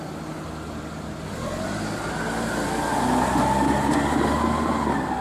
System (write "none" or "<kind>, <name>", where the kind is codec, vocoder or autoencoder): none